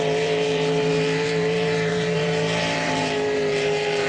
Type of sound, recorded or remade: remade